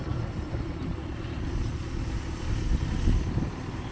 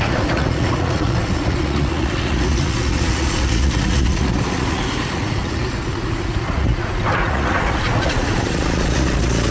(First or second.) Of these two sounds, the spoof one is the second